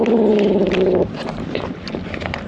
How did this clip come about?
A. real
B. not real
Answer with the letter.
B